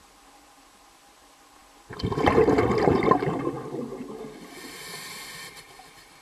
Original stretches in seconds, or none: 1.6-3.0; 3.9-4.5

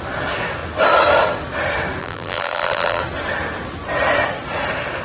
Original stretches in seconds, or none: 0.0-2.0; 3.0-5.0

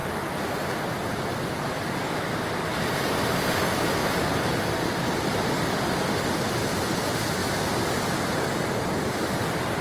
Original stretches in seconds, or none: 0.0-1.3; 2.7-3.2; 4.0-5.3; 7.4-8.4

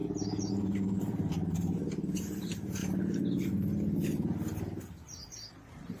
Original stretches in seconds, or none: 0.0-0.5; 2.8-5.5

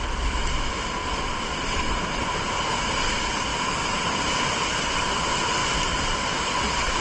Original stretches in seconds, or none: 0.0-1.0; 2.7-3.5; 5.1-7.0

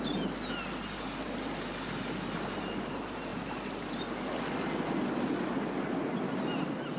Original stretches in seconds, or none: 0.0-7.0

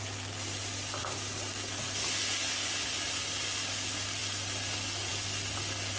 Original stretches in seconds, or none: 0.0-1.0; 1.5-6.0

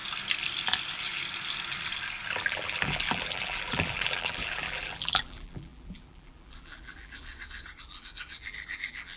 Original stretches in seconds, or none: 0.0-2.4; 7.3-7.8